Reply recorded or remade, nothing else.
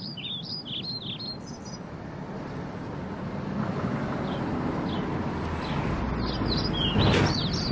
recorded